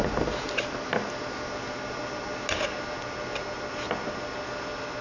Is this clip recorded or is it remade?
recorded